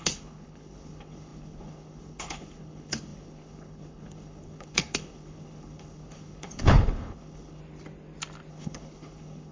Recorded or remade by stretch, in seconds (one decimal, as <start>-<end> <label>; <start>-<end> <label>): 0.0-7.6 remade; 7.6-8.5 recorded; 8.5-9.5 remade